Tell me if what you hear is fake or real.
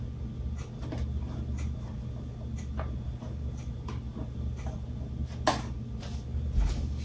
real